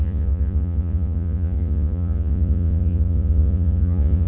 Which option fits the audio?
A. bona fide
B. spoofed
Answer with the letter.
B